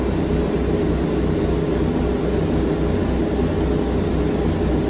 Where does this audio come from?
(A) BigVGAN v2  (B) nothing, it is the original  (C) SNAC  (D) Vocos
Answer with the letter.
B